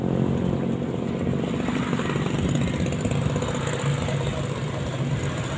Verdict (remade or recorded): remade